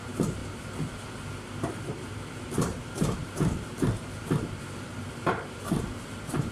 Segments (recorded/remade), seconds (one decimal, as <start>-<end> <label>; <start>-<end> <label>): 0.0-0.4 remade; 0.4-1.6 recorded; 1.6-3.7 remade; 3.7-4.2 recorded; 4.2-6.5 remade